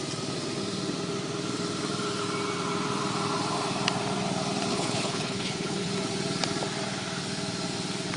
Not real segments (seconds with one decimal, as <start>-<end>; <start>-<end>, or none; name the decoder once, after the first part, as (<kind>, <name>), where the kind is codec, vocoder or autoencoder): 4.7-5.9 (codec, HILCodec)